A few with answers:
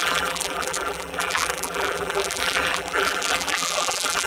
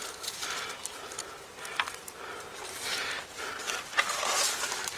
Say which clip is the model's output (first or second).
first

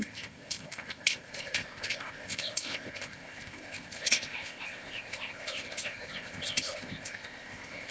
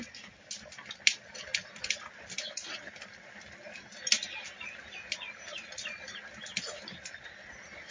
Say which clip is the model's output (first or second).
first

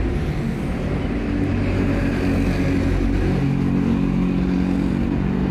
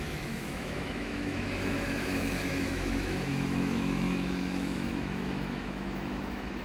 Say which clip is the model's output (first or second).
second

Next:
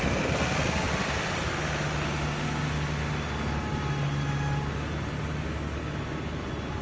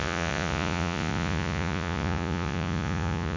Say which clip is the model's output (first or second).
second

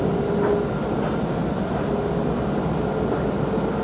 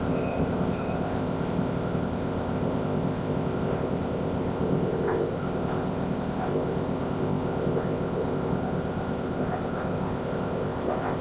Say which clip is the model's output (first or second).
second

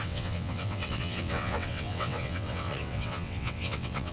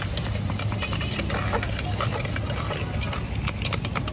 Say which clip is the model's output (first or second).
first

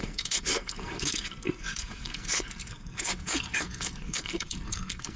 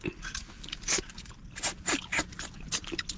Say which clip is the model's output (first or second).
first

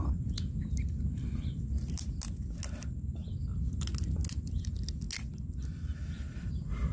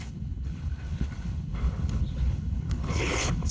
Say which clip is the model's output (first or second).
second